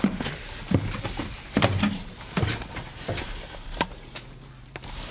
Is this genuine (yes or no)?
no